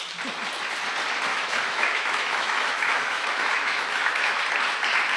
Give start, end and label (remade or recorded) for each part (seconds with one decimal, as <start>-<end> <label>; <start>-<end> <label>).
0.0-1.3 recorded; 1.3-4.4 remade; 4.4-5.2 recorded